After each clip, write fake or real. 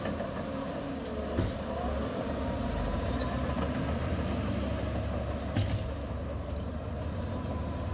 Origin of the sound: real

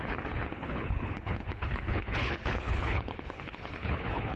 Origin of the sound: fake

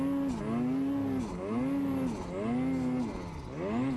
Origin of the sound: real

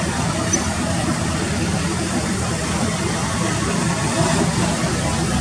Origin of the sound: real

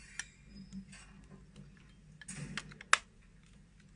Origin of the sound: real